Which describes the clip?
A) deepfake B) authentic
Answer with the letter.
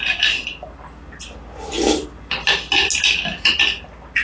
B